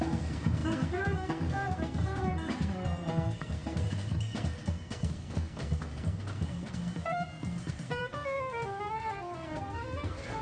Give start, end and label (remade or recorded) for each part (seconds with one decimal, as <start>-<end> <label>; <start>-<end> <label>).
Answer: 0.0-10.4 remade